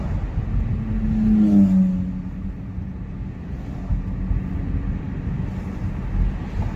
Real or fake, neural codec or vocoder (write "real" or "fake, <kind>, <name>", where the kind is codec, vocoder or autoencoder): real